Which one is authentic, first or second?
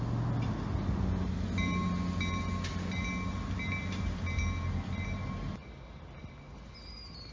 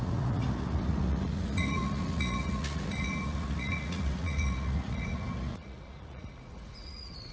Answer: first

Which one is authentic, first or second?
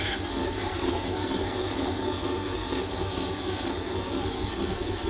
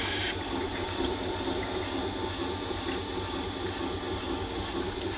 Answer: second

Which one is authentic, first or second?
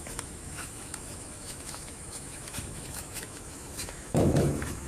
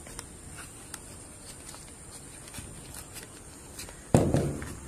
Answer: second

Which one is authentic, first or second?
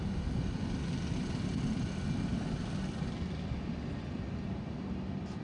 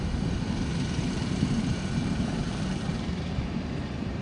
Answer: first